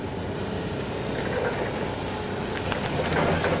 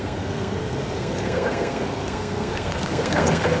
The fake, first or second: second